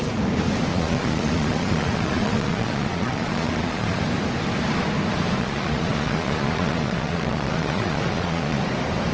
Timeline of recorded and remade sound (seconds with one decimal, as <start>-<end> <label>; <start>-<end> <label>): 0.0-0.7 recorded; 0.7-4.0 remade; 4.0-5.4 recorded; 5.4-8.6 remade; 8.6-9.1 recorded